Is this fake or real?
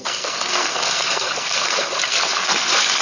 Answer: fake